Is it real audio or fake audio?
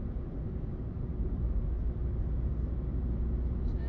real